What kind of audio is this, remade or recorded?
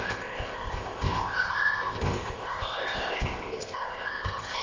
remade